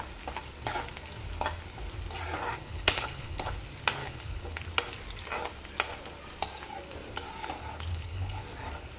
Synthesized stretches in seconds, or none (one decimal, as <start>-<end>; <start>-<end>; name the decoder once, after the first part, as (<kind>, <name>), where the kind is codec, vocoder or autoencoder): 2.6-3.6 (codec, HILCodec); 4.0-4.6; 7.9-8.4